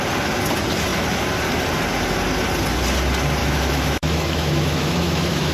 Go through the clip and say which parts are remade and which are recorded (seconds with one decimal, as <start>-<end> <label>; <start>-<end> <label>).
0.0-3.4 recorded; 3.4-5.5 remade